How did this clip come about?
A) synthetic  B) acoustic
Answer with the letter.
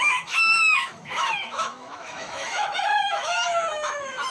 A